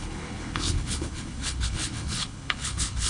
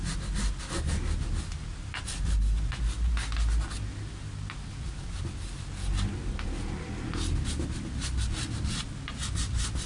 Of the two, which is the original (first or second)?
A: second